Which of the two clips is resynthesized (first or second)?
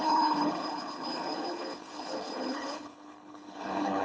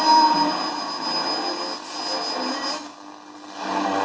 first